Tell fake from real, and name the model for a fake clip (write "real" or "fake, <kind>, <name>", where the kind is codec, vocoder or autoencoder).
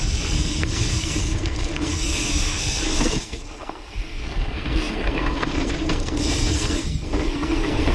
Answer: fake, codec, SNAC